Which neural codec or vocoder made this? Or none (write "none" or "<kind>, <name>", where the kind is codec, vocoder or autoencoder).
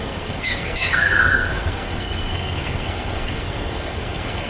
codec, SNAC